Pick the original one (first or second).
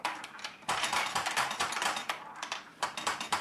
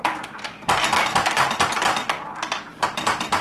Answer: second